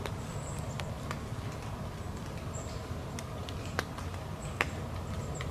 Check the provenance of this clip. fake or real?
real